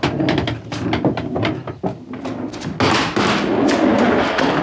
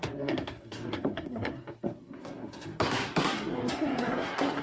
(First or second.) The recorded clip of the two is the first